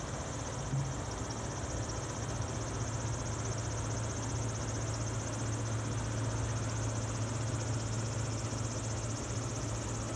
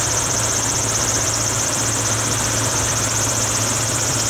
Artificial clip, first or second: second